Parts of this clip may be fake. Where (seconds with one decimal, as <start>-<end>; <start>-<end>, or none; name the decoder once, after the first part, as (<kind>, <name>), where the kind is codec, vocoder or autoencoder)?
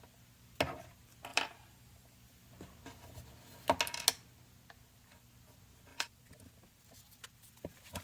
1.3-2.2 (vocoder, BigVGAN v2); 5.9-6.8